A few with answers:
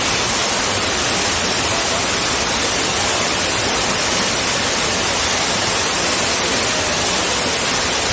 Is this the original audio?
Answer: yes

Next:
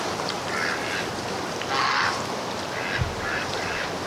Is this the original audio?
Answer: yes